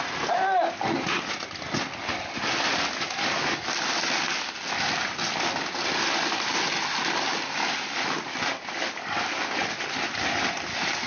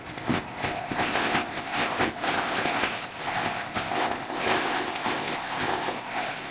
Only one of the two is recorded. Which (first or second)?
first